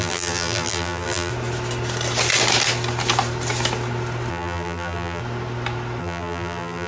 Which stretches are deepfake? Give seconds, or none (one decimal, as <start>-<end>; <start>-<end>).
0.0-1.3; 4.3-5.2; 6.0-6.9